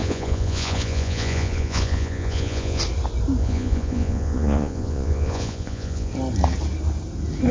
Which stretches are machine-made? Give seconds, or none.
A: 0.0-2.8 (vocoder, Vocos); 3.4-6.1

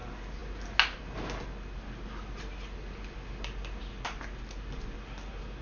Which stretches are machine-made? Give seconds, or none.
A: none

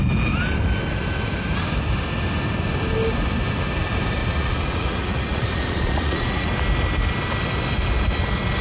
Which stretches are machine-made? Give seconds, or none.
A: 4.2-6.5 (vocoder, Vocos)

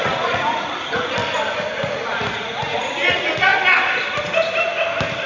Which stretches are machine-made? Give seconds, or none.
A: 0.0-1.2 (vocoder, Vocos); 1.8-3.5